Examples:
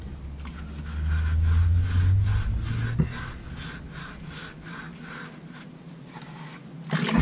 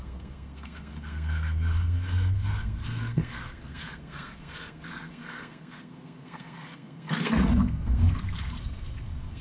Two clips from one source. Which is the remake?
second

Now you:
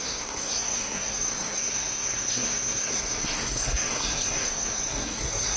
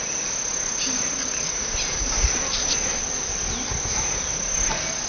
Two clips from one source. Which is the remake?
first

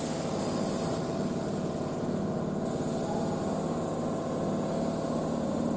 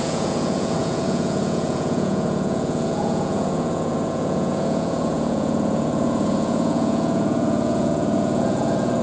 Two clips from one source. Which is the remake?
second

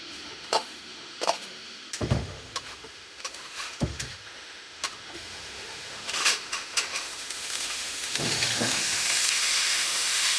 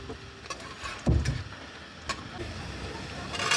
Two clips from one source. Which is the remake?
first